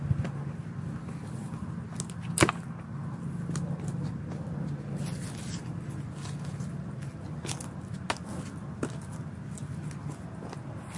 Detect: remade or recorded recorded